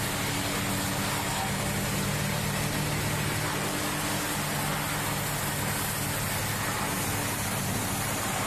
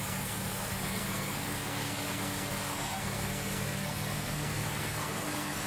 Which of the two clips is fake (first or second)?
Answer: second